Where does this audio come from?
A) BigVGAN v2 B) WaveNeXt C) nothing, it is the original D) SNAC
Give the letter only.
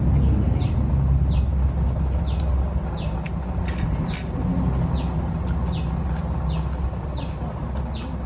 C